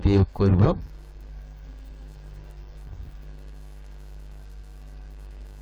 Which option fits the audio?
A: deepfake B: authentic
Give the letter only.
A